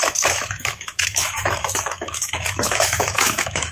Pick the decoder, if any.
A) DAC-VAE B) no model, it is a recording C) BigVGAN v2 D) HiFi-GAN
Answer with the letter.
A